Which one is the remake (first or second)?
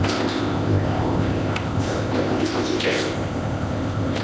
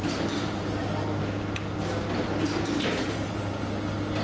first